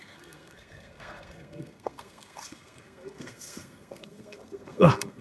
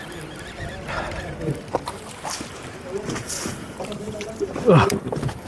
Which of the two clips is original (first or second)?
second